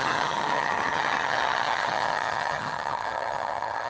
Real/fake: fake